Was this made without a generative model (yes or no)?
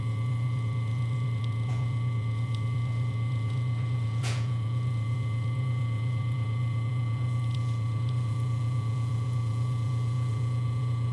no